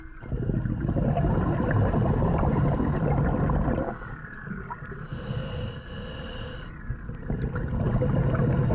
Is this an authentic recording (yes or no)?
yes